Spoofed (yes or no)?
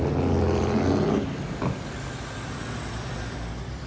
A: no